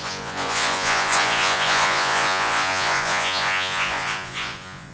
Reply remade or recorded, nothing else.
remade